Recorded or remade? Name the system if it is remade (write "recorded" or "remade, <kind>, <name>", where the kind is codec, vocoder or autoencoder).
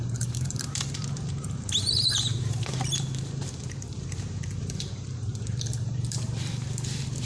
remade, vocoder, BigVGAN v2